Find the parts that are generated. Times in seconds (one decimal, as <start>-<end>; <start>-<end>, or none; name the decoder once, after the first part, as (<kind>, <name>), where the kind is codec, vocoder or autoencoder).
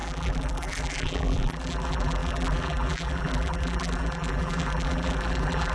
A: 0.0-5.7 (vocoder, BigVGAN v2)